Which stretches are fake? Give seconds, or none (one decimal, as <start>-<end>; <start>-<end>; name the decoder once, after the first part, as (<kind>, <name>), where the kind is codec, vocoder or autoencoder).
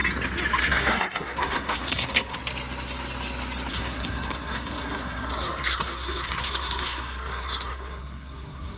0.6-2.4 (codec, SNAC); 3.7-8.8